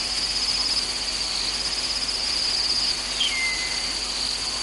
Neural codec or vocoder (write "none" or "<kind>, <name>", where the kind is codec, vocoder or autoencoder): none